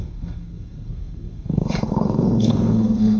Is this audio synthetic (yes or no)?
yes